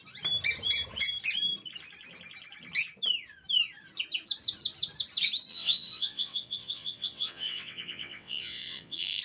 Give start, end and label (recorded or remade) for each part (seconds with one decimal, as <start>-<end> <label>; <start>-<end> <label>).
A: 0.0-5.5 recorded; 5.5-9.2 remade